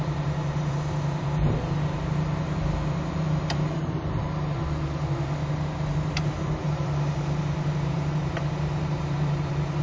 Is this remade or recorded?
remade